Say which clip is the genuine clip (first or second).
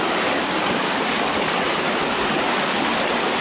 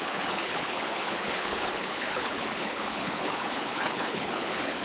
first